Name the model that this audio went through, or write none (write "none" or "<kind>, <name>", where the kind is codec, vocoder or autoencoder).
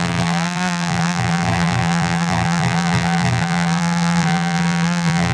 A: vocoder, BigVGAN v2